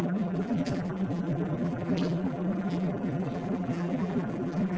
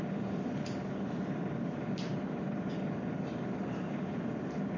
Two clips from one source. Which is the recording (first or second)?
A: second